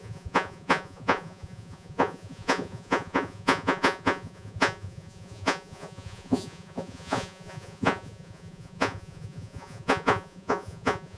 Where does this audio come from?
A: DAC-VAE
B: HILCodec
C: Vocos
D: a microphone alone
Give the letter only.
C